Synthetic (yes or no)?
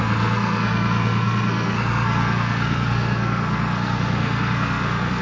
yes